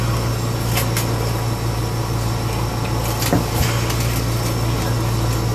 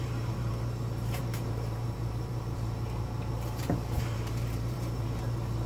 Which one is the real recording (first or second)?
first